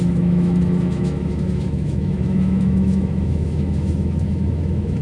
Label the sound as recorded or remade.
remade